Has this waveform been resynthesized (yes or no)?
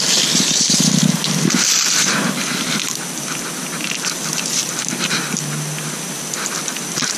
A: no